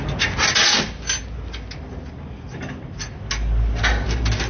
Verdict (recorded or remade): recorded